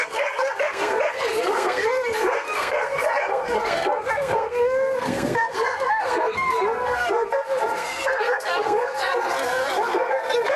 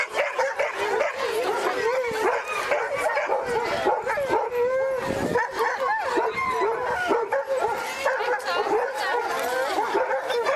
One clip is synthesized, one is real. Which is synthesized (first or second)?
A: first